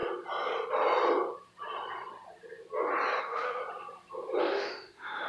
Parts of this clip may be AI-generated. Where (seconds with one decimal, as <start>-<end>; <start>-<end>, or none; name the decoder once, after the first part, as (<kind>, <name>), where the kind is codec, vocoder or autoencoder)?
3.2-3.6 (autoencoder, DAC-VAE); 4.4-5.3